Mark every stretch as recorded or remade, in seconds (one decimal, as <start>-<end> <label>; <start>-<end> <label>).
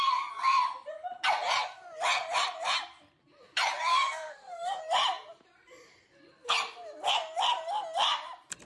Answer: 0.0-3.9 recorded; 3.9-4.8 remade; 4.8-8.6 recorded